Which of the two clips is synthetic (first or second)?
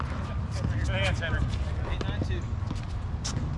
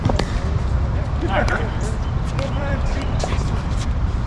second